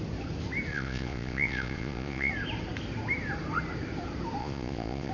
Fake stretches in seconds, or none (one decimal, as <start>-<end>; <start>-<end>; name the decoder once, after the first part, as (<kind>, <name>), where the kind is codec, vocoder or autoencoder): 0.7-2.3 (vocoder, Vocos); 4.4-5.1